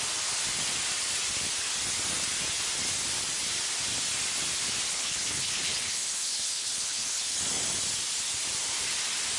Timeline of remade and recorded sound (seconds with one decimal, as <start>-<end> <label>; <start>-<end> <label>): 0.0-4.9 recorded; 4.9-7.4 remade; 7.4-9.4 recorded